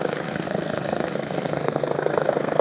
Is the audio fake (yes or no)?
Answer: yes